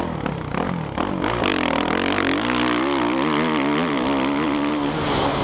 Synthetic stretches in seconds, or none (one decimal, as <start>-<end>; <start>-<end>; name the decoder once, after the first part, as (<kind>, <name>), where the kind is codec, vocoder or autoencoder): none